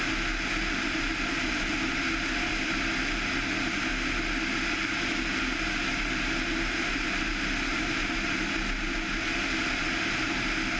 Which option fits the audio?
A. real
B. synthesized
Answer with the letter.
A